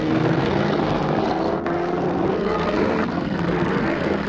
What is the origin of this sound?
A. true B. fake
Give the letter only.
B